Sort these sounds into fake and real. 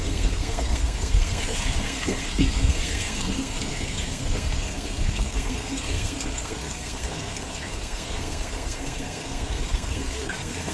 fake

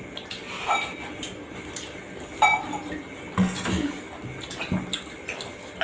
real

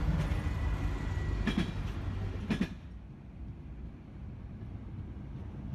real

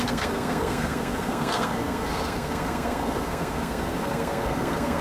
fake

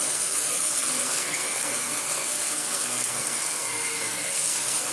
fake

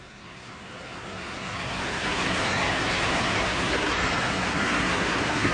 fake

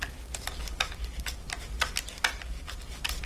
real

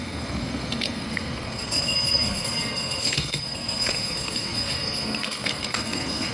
fake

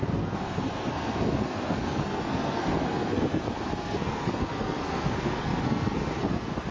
fake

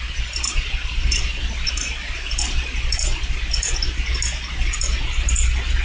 real